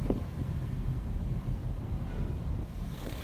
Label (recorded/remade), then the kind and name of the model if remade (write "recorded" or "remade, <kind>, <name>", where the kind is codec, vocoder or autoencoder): remade, codec, SNAC